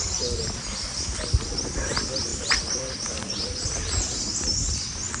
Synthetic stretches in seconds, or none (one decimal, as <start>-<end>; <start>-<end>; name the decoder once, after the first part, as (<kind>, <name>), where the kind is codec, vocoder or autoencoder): 2.3-3.0 (vocoder, BigVGAN v2)